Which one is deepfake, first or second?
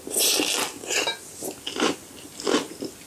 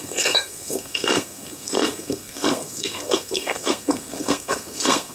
second